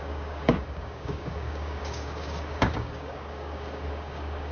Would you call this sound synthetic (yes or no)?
yes